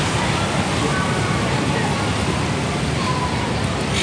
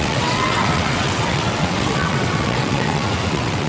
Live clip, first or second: first